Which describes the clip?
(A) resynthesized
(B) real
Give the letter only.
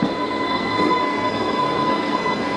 A